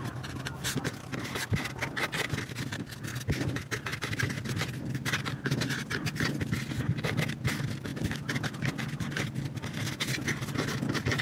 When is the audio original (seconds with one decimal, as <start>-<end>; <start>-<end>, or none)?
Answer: 0.0-11.2